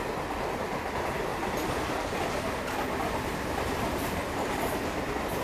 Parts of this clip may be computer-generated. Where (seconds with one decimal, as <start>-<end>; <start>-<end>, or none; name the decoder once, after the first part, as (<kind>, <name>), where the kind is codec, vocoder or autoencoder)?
none